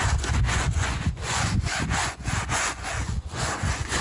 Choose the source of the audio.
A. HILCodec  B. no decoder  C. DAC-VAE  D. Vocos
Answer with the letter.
D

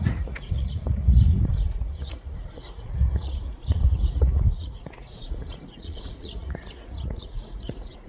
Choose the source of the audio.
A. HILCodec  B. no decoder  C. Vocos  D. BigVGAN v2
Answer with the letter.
C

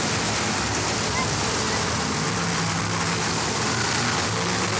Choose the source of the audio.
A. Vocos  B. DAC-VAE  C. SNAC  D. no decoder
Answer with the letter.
D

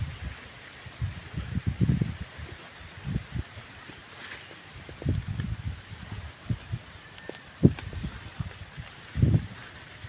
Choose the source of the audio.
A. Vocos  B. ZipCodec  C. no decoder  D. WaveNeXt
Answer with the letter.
C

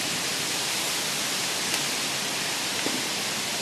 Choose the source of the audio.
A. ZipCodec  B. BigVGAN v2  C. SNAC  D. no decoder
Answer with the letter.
D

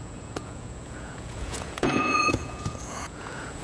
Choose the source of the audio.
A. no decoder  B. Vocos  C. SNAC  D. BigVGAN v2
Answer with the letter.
B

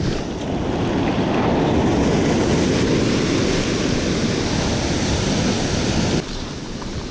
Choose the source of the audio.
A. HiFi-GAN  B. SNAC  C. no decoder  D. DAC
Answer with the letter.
C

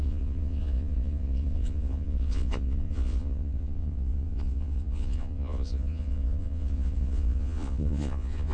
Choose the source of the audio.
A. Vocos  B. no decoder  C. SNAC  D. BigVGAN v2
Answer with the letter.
A